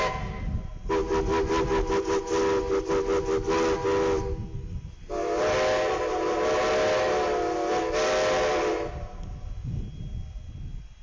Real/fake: real